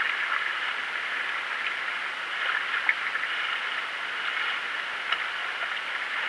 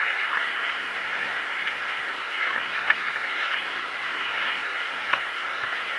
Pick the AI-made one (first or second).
second